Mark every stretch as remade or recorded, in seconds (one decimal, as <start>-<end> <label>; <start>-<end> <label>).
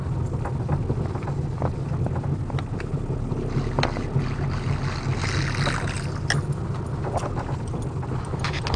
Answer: 0.0-8.8 recorded